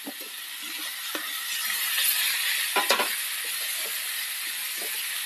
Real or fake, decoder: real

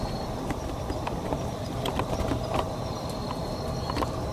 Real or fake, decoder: fake, vocoder, BigVGAN v2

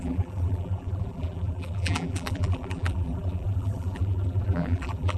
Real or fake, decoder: fake, vocoder, BigVGAN v2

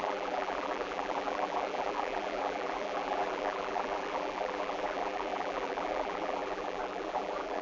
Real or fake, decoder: fake, vocoder, BigVGAN v2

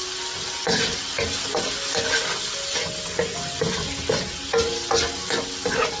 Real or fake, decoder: real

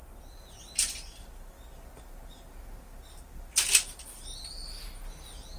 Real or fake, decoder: real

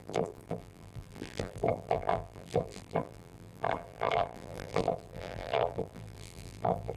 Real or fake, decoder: fake, vocoder, BigVGAN v2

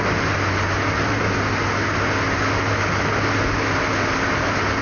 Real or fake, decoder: real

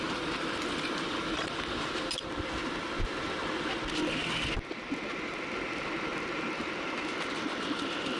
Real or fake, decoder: real